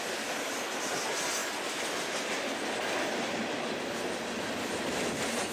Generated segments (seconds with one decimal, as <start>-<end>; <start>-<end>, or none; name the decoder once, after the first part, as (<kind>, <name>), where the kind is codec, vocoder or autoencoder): none